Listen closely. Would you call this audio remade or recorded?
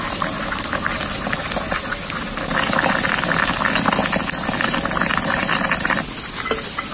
recorded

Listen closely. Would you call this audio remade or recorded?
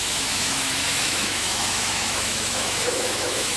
remade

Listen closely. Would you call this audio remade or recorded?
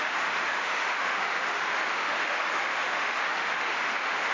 remade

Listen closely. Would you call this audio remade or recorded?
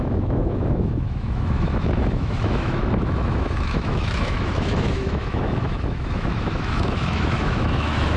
remade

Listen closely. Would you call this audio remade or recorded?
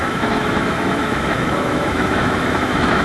remade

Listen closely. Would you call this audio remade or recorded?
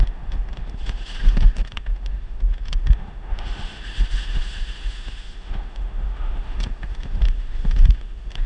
remade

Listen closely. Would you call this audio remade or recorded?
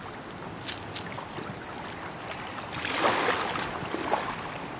recorded